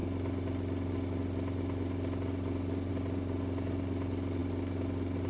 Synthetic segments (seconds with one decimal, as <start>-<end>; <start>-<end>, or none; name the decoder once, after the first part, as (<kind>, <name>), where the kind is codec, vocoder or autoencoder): none